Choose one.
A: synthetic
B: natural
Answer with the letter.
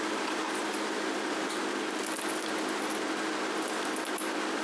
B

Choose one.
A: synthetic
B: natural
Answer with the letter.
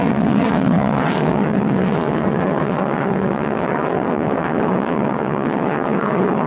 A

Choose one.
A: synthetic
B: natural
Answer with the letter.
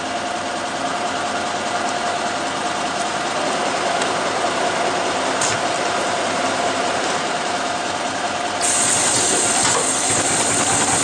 B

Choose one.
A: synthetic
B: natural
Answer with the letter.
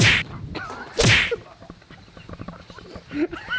B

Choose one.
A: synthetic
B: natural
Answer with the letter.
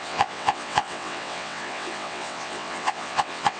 A